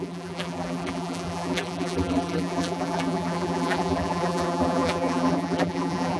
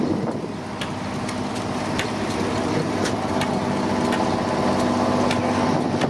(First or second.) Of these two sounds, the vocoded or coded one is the first